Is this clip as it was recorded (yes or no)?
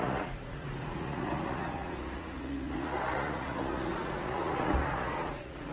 no